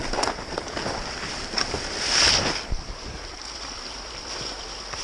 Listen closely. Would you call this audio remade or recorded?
recorded